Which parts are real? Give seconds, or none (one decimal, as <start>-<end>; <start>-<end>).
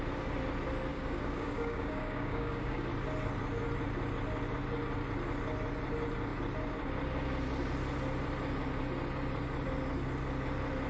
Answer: 0.0-0.9; 2.9-10.9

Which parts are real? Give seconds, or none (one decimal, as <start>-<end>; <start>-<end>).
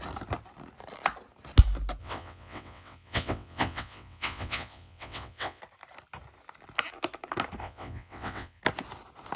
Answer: 0.0-2.0; 5.6-7.6; 8.6-9.4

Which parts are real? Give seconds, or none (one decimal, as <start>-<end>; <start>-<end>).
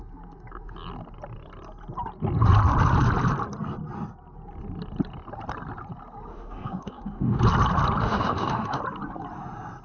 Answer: 0.0-6.3; 7.4-8.0; 8.8-9.8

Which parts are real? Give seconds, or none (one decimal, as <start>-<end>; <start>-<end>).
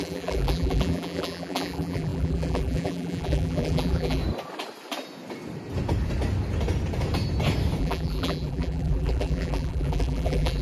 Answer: 4.2-7.8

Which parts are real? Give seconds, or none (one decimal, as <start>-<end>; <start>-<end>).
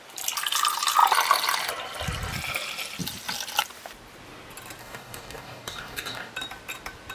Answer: 0.0-4.8; 6.3-7.1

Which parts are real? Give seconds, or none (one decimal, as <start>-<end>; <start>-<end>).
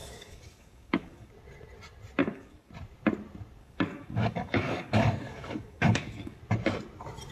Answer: 1.3-2.2; 2.7-3.6; 6.4-7.3